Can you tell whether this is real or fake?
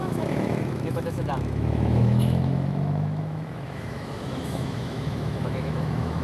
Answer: fake